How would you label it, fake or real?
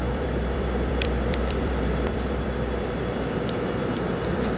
fake